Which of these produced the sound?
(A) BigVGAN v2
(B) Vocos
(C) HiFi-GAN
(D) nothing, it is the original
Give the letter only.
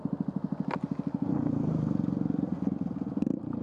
D